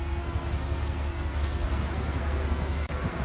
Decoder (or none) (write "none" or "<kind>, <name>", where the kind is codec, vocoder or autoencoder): codec, SNAC